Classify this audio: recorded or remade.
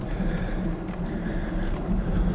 remade